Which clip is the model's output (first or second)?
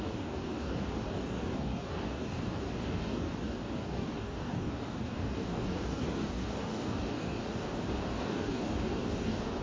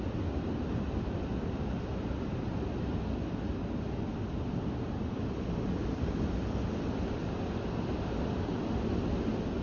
first